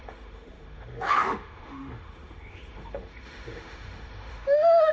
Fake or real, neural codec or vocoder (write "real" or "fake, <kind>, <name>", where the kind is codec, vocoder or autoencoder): fake, autoencoder, DAC-VAE